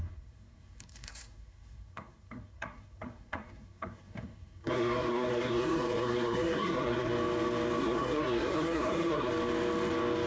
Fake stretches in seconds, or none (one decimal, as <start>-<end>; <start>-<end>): 0.0-7.1; 7.8-9.3